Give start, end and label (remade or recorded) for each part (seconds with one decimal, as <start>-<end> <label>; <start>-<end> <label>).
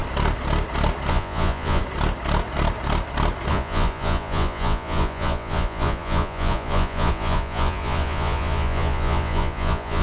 0.0-1.1 recorded; 1.1-1.8 remade; 1.8-3.5 recorded; 3.5-10.0 remade